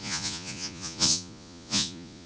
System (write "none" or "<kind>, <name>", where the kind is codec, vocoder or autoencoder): vocoder, Vocos